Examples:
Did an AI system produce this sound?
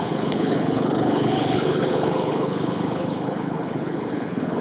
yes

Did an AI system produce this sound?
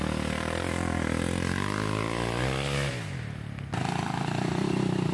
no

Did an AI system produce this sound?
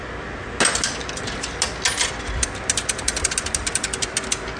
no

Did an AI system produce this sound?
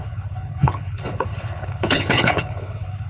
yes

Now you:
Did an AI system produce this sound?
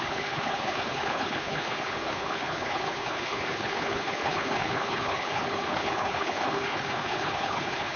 yes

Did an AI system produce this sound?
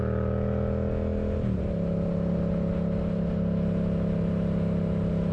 no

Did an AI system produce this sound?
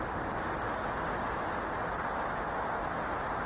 no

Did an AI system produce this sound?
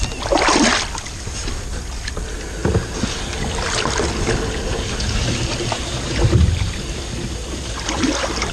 no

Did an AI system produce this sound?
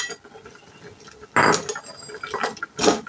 no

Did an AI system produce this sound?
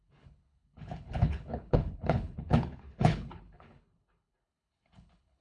yes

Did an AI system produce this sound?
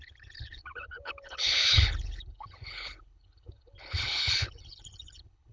yes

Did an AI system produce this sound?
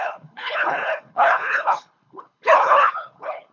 yes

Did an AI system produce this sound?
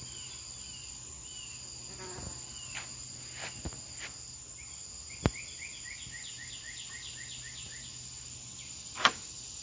no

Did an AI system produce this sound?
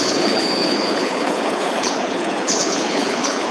yes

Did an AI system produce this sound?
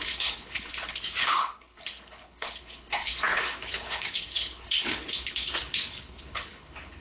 yes